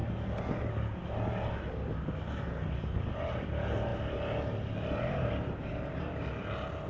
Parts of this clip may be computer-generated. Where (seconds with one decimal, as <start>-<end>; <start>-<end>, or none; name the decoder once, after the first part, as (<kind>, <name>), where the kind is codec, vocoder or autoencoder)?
none